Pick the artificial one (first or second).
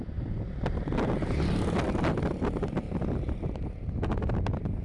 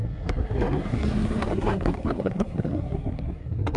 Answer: second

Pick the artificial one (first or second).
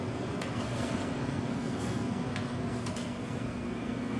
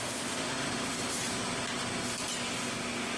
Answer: first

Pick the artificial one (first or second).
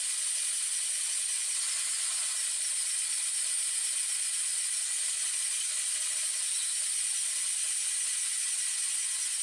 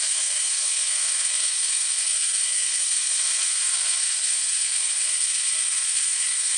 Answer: second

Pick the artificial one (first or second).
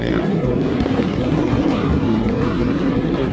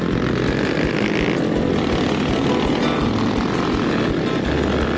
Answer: first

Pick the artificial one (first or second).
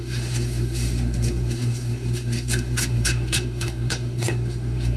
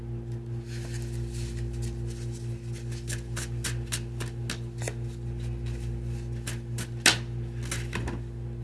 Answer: first